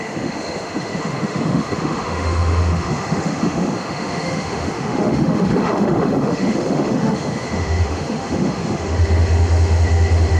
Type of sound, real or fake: fake